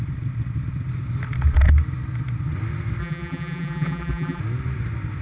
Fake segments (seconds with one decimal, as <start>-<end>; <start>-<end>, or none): 3.0-4.4